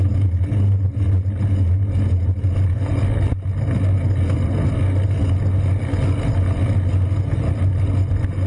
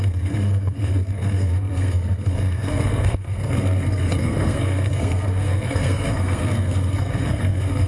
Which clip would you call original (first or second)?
first